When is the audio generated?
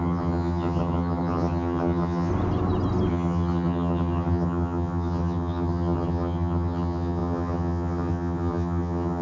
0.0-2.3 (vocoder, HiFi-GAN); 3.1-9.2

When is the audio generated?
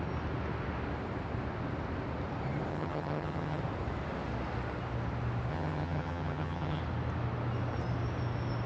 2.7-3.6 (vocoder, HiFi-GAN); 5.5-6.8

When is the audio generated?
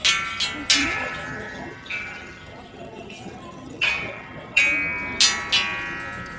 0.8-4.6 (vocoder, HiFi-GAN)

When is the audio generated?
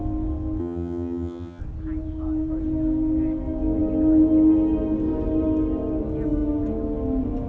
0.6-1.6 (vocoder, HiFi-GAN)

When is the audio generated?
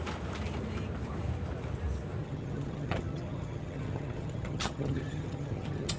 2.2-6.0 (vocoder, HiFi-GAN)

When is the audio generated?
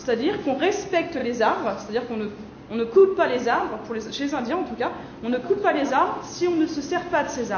none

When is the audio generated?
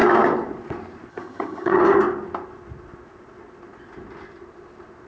1.1-1.8 (vocoder, HiFi-GAN)